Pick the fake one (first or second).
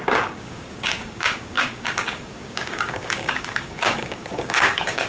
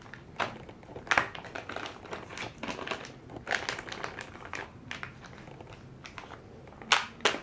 first